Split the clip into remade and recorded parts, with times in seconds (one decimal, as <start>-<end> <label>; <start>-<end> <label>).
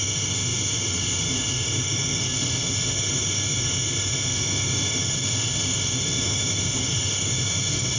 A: 0.0-8.0 remade